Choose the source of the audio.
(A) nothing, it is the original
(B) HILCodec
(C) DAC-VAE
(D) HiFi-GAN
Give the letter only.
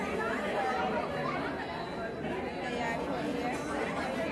A